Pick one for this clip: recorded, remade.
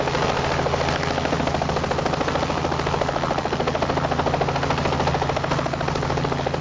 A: recorded